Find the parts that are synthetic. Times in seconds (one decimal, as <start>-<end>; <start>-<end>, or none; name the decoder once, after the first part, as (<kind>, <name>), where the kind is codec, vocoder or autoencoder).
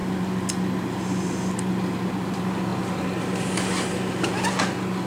none